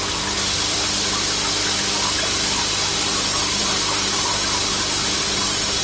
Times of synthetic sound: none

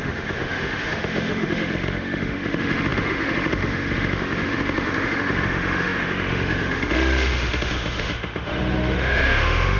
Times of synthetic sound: 0.0-9.8 (autoencoder, DAC-VAE)

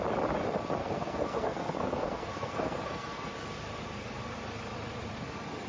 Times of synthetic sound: 0.8-3.3 (codec, SNAC)

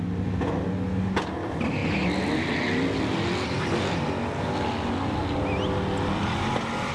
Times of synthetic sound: none

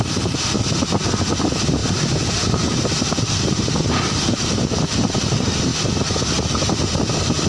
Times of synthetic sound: 0.0-5.7 (vocoder, BigVGAN v2); 6.9-7.5